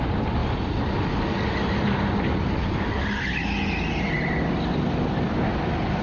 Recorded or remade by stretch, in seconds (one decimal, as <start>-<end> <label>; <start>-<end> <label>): 0.0-6.0 recorded